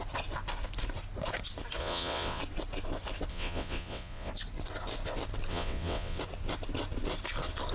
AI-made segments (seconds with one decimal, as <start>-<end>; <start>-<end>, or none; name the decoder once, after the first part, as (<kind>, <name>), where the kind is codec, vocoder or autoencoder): 1.8-2.4 (vocoder, WaveNeXt); 3.3-4.3; 5.5-6.2